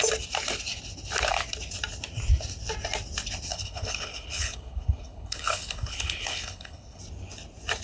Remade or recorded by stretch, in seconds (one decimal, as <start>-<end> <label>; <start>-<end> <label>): 0.0-3.5 recorded; 3.5-7.0 remade; 7.0-7.8 recorded